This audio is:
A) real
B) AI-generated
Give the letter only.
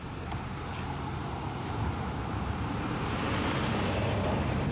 B